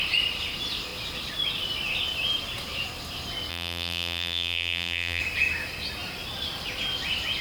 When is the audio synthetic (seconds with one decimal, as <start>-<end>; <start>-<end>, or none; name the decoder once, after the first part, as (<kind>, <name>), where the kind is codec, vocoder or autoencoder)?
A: 3.5-5.2 (vocoder, BigVGAN v2)